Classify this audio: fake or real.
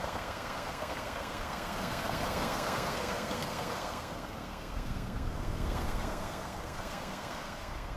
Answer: fake